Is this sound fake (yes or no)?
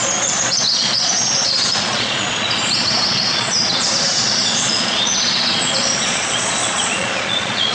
yes